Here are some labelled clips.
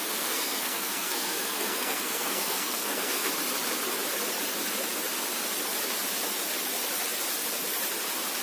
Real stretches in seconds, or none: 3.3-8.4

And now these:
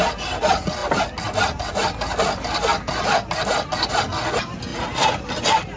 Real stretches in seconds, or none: 0.0-5.8

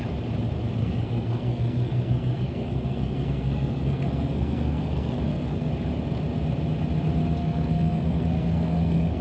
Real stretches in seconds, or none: 0.0-0.8; 5.7-7.4

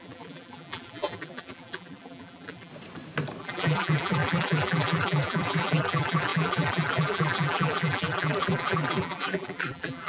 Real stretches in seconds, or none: 2.7-3.4